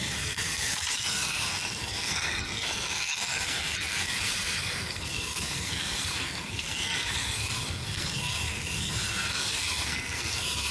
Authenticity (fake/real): fake